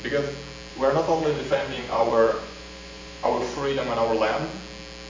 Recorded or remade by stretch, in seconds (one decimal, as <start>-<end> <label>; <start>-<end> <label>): 0.0-0.7 recorded; 0.7-3.8 remade; 3.8-5.1 recorded